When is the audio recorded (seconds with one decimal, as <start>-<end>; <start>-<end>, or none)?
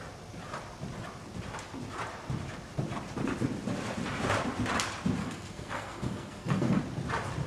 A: 0.0-5.2; 6.8-7.5